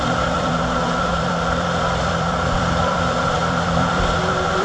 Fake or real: fake